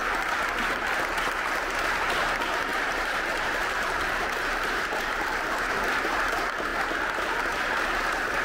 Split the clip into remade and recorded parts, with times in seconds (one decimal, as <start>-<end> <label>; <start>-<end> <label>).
0.0-2.7 recorded; 2.7-5.8 remade; 5.8-8.4 recorded

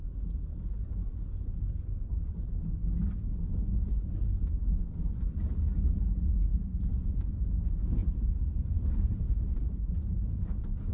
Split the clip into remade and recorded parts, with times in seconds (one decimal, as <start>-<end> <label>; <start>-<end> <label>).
0.0-6.5 recorded; 6.5-7.3 remade; 7.3-8.0 recorded; 8.0-10.9 remade

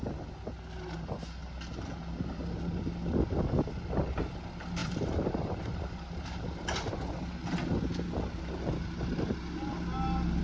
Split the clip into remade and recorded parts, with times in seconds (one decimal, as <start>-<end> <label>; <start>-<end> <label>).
0.0-4.8 recorded; 4.8-6.5 remade; 6.5-10.4 recorded

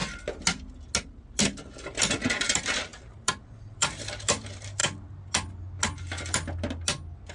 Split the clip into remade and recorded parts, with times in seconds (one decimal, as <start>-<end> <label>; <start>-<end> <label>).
0.0-2.0 recorded; 2.0-4.8 remade; 4.8-7.3 recorded

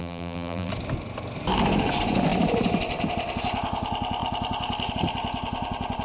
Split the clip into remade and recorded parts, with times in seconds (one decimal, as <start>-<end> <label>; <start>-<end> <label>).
0.0-0.7 remade; 0.7-6.0 recorded

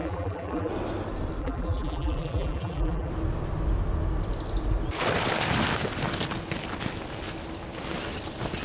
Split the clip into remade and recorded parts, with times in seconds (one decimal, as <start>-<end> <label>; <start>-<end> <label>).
0.0-0.7 remade; 0.7-1.4 recorded; 1.4-3.1 remade; 3.1-8.6 recorded

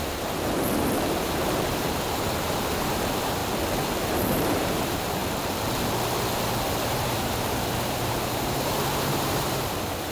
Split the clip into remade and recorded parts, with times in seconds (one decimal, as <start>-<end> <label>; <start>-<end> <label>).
0.0-3.4 remade; 3.4-4.1 recorded; 4.1-5.2 remade; 5.2-6.7 recorded; 6.7-10.1 remade

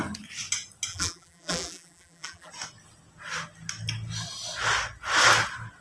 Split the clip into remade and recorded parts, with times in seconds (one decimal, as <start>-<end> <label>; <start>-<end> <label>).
0.0-0.9 recorded; 0.9-2.5 remade; 2.5-5.8 recorded